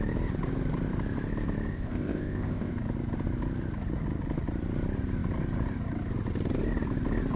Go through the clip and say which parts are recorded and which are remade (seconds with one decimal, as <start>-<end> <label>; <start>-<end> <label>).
0.0-1.7 recorded; 1.7-2.7 remade; 2.7-7.4 recorded